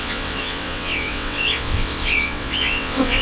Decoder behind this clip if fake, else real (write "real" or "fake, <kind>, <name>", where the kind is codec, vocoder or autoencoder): fake, vocoder, WaveNeXt